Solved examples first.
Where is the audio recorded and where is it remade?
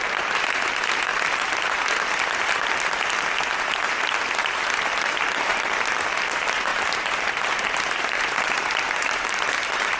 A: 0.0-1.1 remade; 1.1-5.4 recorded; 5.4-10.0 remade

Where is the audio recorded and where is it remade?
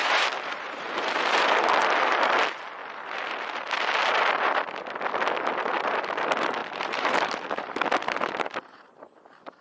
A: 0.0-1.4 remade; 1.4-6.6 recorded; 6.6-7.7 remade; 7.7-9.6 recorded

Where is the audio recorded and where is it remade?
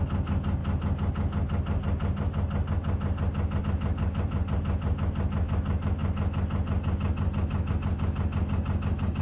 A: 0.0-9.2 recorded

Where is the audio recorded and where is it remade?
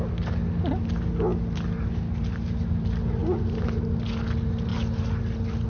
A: 0.0-5.7 recorded